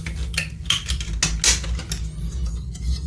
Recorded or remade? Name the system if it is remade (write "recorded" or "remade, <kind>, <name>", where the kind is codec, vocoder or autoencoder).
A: recorded